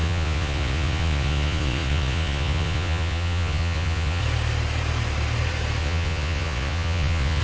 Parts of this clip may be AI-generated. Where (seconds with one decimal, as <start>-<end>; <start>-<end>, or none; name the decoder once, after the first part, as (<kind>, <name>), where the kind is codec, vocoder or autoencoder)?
0.0-4.2 (vocoder, Vocos); 5.8-7.4